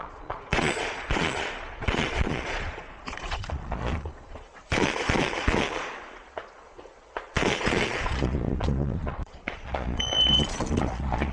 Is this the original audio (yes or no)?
no